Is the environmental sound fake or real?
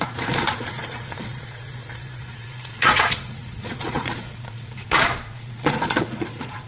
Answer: fake